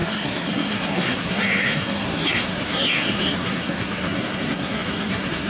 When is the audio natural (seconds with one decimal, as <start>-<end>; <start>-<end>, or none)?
none